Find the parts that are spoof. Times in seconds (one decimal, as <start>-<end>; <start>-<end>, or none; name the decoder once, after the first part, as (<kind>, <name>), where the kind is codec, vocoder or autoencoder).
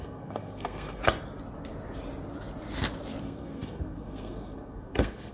0.0-1.0 (codec, SNAC); 3.2-5.3